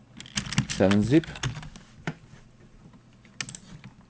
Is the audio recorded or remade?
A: recorded